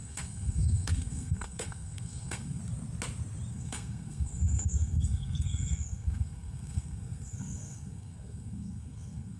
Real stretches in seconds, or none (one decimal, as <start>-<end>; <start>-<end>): 2.6-3.5